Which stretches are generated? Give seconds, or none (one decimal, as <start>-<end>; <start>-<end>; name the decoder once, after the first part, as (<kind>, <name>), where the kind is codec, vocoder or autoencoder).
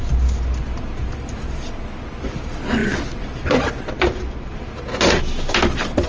none